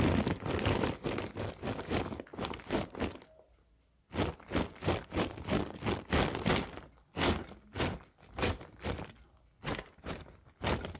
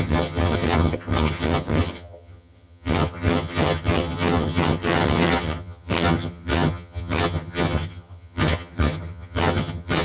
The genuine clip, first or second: first